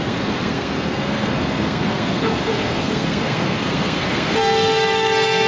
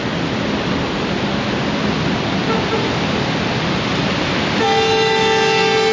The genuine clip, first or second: second